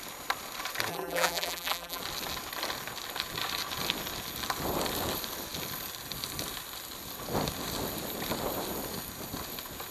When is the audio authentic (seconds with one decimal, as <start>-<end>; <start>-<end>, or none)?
0.0-0.9; 2.0-9.9